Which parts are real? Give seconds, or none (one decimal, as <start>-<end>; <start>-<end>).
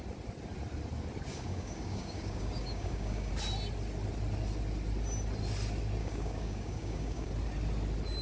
0.0-1.3; 3.3-6.0; 7.3-8.2